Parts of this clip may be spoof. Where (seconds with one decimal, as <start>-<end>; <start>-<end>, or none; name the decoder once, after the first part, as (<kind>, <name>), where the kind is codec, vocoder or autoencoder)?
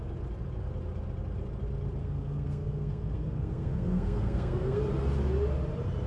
2.0-4.8 (codec, SNAC)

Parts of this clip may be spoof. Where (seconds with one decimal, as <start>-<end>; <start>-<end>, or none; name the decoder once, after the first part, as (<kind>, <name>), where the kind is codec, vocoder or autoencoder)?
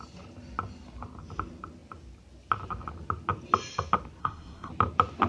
4.2-4.7 (codec, SNAC)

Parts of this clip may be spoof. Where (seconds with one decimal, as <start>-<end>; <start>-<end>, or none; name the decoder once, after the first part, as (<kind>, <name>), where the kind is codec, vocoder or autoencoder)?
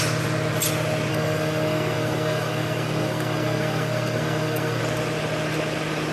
1.1-4.8 (codec, SNAC)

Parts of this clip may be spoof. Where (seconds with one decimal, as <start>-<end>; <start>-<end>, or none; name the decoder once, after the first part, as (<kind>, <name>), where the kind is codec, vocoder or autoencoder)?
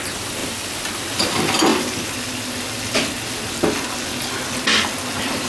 none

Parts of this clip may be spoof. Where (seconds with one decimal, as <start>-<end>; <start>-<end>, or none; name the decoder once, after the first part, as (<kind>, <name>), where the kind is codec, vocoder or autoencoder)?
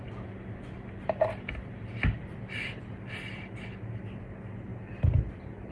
none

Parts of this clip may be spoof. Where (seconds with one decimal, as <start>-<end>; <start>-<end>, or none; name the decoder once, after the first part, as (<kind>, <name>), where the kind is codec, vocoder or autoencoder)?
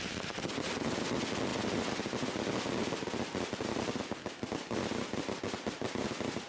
none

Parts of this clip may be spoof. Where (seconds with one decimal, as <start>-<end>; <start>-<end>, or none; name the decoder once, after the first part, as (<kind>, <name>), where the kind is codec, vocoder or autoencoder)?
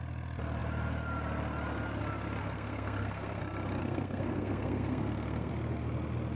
2.4-3.4 (codec, SNAC); 3.8-5.5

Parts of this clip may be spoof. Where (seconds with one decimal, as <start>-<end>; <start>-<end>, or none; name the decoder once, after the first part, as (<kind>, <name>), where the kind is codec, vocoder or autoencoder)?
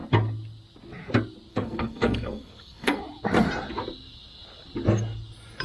1.5-3.0 (codec, SNAC)